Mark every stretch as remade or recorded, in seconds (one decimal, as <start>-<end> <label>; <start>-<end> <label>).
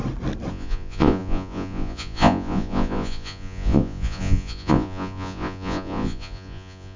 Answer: 0.0-0.5 recorded; 0.5-7.0 remade